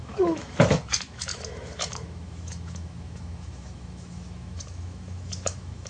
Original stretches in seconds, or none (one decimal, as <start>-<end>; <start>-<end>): none